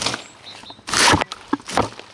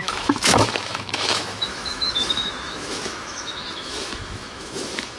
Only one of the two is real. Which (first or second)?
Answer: first